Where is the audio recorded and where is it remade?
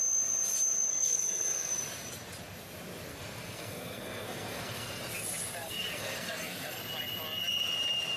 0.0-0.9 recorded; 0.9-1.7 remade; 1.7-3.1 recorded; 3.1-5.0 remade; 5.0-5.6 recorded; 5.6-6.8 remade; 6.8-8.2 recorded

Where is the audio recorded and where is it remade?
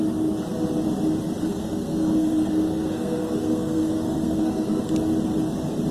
0.0-1.4 recorded; 1.4-4.9 remade; 4.9-5.9 recorded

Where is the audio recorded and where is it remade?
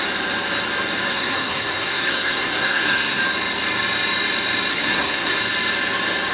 0.0-1.1 recorded; 1.1-3.2 remade; 3.2-4.7 recorded; 4.7-5.4 remade; 5.4-6.3 recorded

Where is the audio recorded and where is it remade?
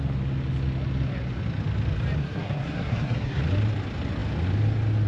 0.0-2.2 recorded; 2.2-3.4 remade; 3.4-5.1 recorded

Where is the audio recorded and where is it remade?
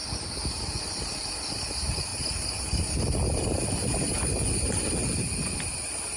0.0-6.2 recorded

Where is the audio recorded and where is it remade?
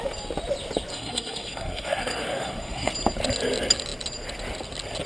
0.0-0.9 recorded; 0.9-2.9 remade; 2.9-5.1 recorded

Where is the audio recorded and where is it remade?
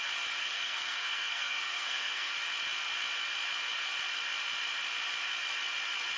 0.0-0.4 recorded; 0.4-2.3 remade; 2.3-6.2 recorded